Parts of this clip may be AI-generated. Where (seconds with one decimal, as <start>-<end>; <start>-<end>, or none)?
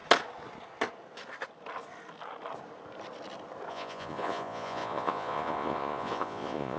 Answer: 3.7-6.8